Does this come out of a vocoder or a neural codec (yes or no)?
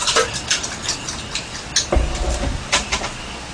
no